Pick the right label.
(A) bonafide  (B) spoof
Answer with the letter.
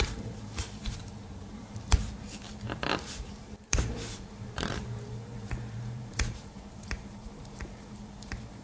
B